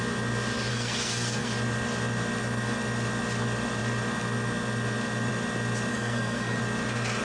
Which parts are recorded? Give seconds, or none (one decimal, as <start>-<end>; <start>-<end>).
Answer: 0.0-0.7; 1.5-5.9; 6.6-7.2